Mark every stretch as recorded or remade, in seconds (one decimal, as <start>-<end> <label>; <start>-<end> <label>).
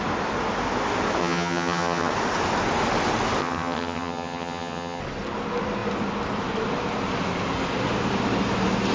0.0-1.2 recorded; 1.2-2.1 remade; 2.1-3.4 recorded; 3.4-5.0 remade; 5.0-8.9 recorded